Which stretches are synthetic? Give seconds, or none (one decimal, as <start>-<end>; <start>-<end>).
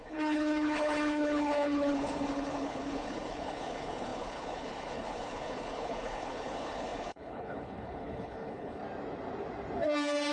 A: 0.0-8.8